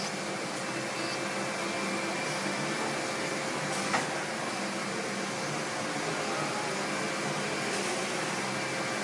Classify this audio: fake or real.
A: real